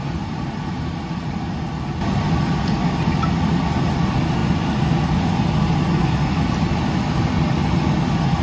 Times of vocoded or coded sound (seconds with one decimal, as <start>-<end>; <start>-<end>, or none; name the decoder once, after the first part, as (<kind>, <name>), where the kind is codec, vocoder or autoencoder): 0.0-4.4 (vocoder, BigVGAN v2); 6.1-8.4